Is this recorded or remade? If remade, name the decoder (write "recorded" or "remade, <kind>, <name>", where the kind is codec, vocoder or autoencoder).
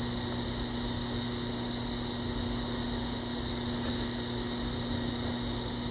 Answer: recorded